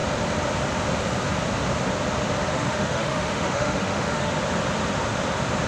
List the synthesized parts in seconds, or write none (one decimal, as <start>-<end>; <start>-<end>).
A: 2.5-4.3